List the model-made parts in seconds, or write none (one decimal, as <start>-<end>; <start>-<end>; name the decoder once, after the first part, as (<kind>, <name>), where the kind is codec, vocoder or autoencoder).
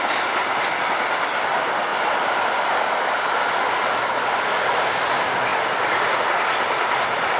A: none